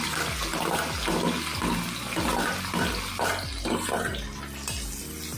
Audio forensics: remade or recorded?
recorded